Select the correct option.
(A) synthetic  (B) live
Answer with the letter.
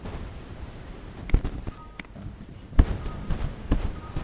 A